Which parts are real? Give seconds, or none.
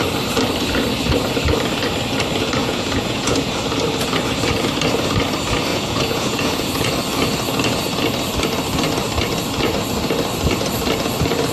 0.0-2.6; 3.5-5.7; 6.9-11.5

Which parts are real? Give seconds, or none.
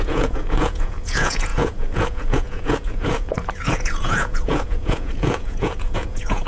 none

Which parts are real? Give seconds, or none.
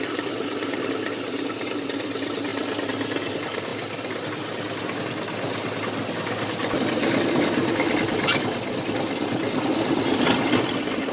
0.0-11.1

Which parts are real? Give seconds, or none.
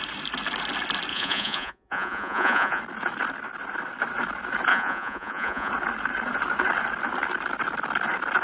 0.0-1.1; 2.8-4.7; 5.7-8.4